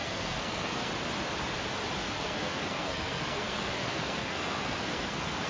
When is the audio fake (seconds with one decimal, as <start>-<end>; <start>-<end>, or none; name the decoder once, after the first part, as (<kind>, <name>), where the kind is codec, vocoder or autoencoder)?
0.0-0.9 (codec, SNAC); 2.0-5.5